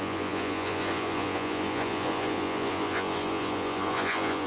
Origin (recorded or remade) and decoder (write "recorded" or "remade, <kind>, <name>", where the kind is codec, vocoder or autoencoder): remade, vocoder, Vocos